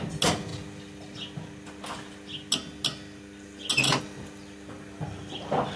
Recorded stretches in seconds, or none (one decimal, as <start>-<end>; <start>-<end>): 0.0-5.8